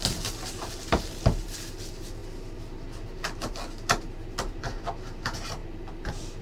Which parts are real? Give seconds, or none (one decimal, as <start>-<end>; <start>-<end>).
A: 0.0-6.4